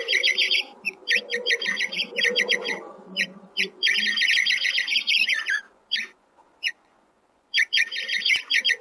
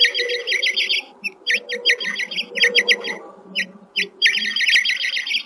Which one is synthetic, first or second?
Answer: first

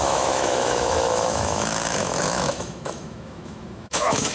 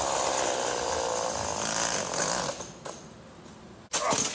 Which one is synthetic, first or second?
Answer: first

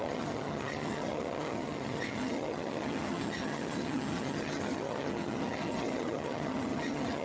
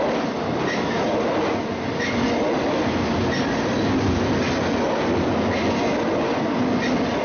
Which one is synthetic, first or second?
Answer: first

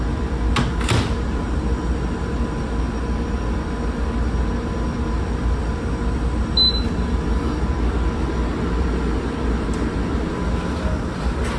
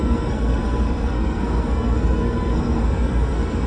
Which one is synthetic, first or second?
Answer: second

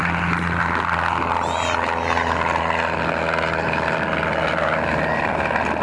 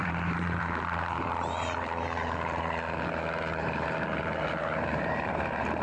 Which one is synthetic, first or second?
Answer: second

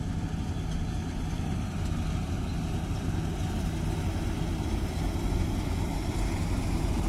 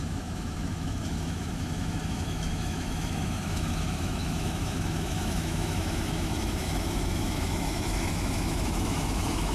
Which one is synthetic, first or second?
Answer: second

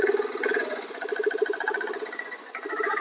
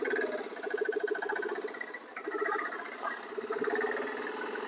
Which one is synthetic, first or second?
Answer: first